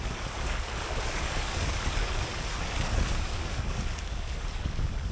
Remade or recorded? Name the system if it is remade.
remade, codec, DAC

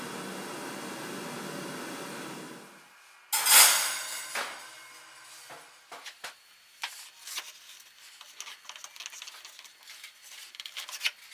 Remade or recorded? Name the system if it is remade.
recorded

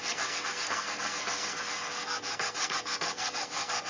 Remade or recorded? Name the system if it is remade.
remade, codec, SNAC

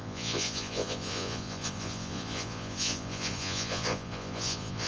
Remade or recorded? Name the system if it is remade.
remade, vocoder, Vocos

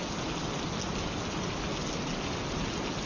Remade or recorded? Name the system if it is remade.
recorded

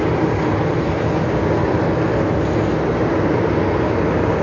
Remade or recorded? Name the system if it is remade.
recorded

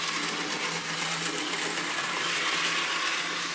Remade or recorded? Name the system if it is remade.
recorded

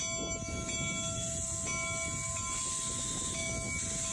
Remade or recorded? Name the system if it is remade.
recorded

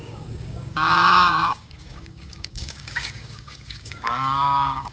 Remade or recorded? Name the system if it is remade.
remade, codec, DAC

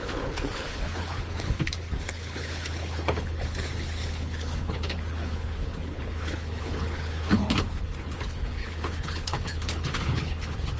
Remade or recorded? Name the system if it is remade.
remade, codec, HILCodec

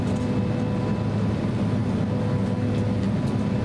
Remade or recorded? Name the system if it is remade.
recorded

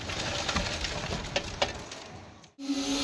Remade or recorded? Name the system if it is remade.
recorded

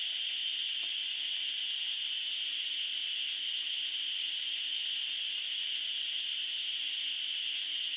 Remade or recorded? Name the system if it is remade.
recorded